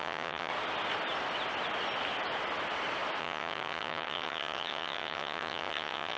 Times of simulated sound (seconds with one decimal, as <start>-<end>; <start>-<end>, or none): 0.0-0.5; 3.2-6.2